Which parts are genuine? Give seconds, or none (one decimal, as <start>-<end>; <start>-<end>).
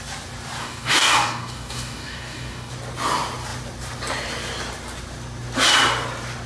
0.0-0.6; 2.7-6.5